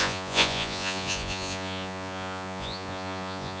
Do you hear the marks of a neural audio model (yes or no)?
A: yes